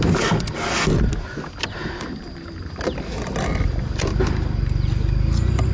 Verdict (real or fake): real